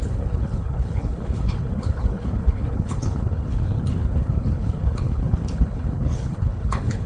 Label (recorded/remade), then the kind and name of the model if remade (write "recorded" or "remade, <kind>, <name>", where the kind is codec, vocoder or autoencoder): remade, codec, HILCodec